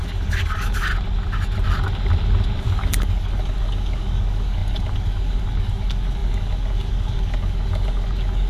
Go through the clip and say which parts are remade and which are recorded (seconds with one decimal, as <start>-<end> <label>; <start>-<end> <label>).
0.0-0.9 remade; 0.9-2.6 recorded; 2.6-8.5 remade